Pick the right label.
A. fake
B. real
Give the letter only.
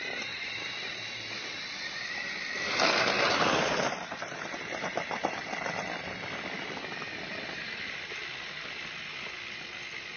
B